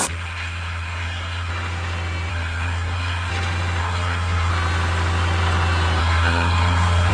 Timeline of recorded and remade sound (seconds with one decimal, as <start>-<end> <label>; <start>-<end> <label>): 0.0-1.5 remade; 1.5-2.3 recorded; 2.3-3.3 remade; 3.3-3.8 recorded; 3.8-4.5 remade; 4.5-6.0 recorded; 6.0-7.1 remade